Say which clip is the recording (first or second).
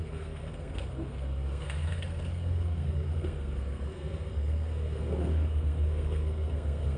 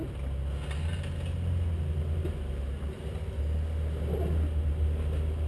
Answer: second